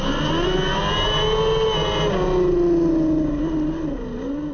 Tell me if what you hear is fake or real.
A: real